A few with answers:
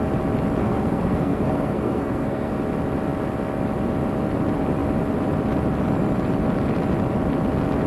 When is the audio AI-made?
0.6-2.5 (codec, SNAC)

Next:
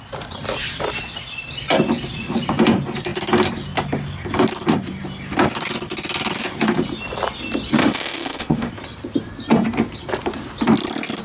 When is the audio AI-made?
7.8-8.7 (autoencoder, DAC-VAE)

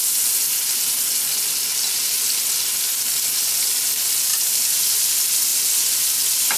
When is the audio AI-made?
4.3-5.0 (vocoder, BigVGAN v2)